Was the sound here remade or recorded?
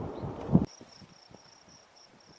recorded